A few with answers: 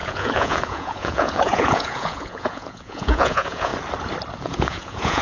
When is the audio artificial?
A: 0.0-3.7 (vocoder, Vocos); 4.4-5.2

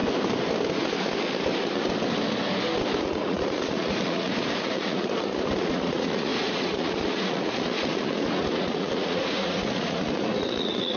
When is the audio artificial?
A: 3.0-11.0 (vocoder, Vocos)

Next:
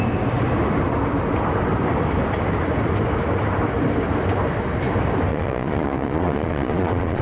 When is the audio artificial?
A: 5.3-7.2 (vocoder, Vocos)